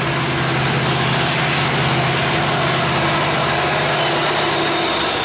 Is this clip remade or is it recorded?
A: recorded